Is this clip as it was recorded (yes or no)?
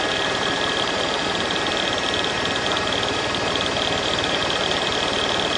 no